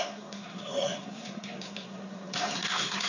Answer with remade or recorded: remade